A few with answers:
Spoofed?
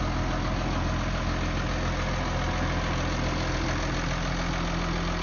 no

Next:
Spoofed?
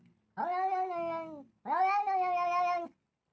no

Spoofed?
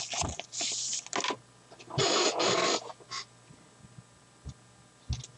no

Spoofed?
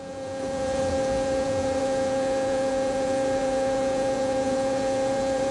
yes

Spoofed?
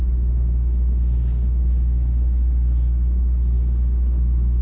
no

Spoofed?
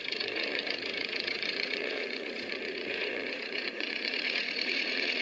yes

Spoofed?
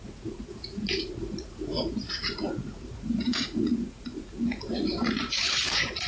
yes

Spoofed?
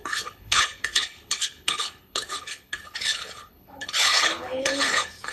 yes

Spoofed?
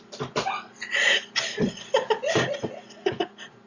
no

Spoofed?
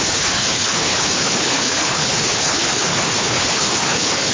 yes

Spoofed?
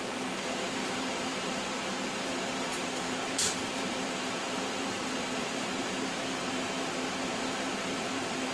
yes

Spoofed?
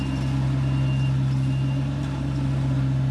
no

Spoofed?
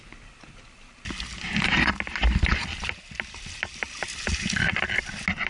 no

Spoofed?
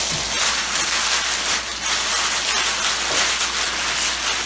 no